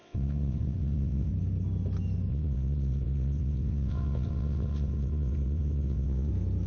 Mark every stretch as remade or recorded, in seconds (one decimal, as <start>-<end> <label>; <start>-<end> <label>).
0.0-1.3 remade; 1.3-2.3 recorded; 2.3-6.3 remade; 6.3-6.7 recorded